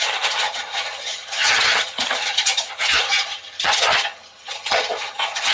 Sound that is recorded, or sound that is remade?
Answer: remade